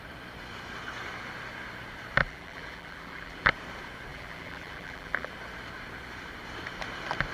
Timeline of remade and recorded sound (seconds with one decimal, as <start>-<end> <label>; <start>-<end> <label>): 0.0-2.2 recorded; 2.2-3.5 remade; 3.5-4.1 recorded; 4.1-5.3 remade; 5.3-7.3 recorded